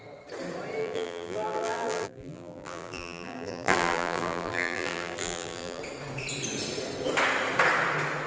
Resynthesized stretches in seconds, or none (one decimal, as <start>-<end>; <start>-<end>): 0.8-5.8